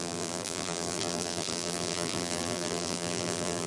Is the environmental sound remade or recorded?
remade